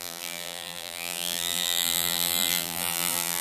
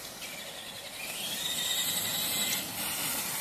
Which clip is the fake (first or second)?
first